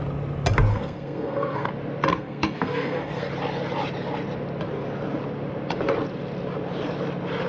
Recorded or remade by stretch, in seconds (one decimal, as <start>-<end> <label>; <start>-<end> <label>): 0.0-0.7 recorded; 0.7-1.7 remade; 1.7-2.1 recorded; 2.1-3.3 remade; 3.3-7.5 recorded